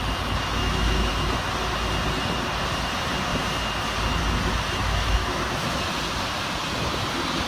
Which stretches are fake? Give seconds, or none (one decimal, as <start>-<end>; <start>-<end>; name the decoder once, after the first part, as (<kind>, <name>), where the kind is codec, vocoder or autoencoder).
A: 0.6-1.1 (autoencoder, DAC-VAE); 4.8-5.8